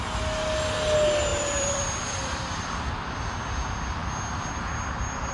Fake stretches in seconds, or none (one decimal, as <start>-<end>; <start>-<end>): 1.3-2.9